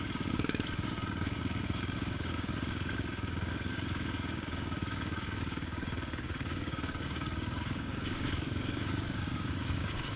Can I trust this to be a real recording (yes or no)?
no